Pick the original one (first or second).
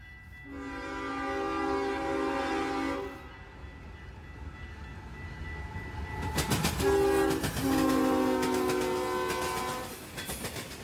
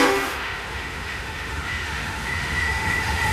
first